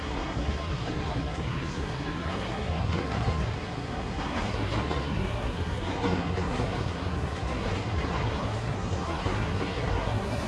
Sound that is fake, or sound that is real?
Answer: fake